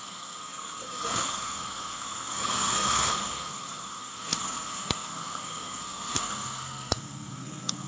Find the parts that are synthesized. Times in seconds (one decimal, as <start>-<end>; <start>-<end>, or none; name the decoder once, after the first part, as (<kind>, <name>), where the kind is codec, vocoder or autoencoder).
0.0-7.9 (codec, SNAC)